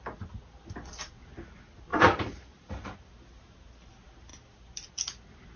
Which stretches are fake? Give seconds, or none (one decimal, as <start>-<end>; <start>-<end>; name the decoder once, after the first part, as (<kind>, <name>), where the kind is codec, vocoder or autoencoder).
1.9-3.1 (vocoder, BigVGAN v2)